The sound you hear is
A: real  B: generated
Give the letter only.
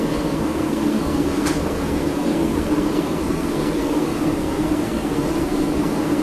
B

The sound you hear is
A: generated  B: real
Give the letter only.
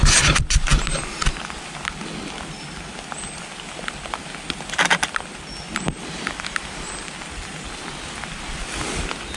B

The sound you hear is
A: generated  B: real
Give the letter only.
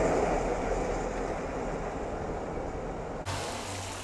B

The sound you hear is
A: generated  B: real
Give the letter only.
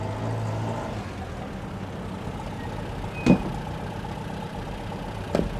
B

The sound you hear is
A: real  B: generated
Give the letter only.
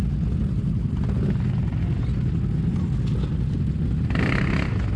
A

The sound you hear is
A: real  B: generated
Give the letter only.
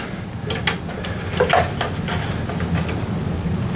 A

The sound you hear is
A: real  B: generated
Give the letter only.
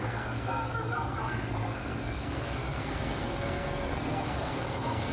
B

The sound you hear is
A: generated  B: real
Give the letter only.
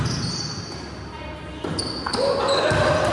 B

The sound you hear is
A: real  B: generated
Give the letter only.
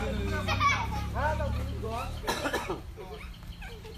A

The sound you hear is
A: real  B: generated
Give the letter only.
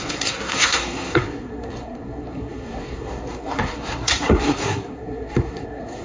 B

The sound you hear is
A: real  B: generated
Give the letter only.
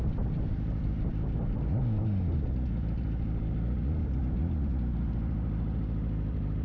A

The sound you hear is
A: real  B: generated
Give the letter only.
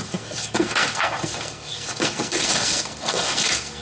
B